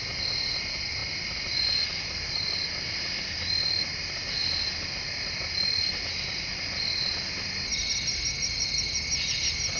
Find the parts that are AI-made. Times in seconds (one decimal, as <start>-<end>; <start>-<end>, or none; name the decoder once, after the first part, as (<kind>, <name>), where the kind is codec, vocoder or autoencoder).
none